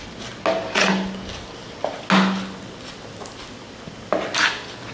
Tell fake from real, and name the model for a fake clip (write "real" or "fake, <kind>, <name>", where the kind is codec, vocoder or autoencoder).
real